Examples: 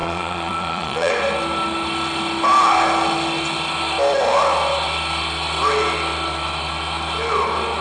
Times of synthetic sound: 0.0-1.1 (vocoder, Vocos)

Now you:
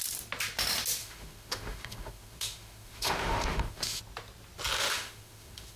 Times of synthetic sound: 1.0-4.0 (autoencoder, DAC-VAE); 4.8-5.8